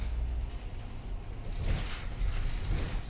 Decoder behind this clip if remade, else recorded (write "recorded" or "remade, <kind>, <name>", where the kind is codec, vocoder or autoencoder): recorded